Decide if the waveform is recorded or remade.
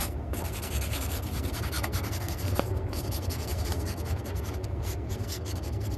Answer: remade